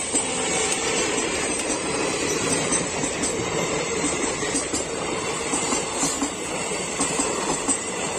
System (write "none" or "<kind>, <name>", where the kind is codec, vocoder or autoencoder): vocoder, BigVGAN v2